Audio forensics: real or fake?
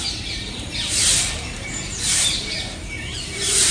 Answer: fake